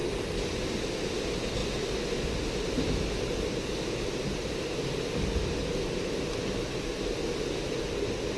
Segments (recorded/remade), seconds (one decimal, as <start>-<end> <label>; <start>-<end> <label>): 0.0-8.4 recorded